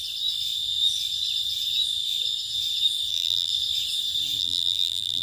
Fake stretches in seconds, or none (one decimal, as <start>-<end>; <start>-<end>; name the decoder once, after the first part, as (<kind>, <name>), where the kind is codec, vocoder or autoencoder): 3.1-3.5 (vocoder, BigVGAN v2); 4.4-5.2